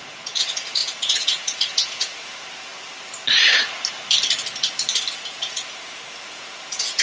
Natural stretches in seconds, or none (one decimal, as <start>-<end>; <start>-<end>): 2.7-5.1

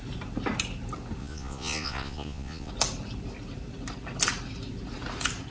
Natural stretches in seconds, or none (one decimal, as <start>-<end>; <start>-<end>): 0.0-1.2; 2.7-5.5

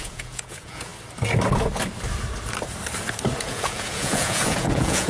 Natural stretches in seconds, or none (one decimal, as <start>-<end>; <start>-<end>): 0.9-3.4

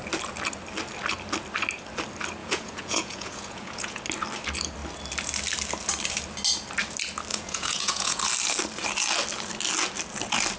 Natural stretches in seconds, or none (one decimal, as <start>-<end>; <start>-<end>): 0.0-2.4; 4.0-7.3; 8.2-10.6

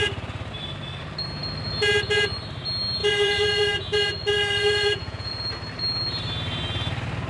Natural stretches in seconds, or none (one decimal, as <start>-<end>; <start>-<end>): 0.0-3.0; 5.3-7.3

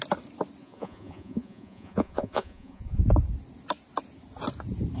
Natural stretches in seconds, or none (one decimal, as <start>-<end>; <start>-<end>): 0.0-0.6; 3.0-5.0

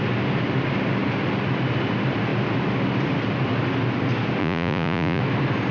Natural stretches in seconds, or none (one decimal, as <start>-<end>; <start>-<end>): 0.0-4.4; 5.2-5.7

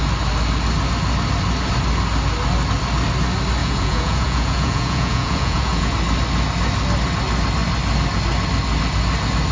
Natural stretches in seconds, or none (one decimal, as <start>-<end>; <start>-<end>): 0.0-3.6; 5.9-9.5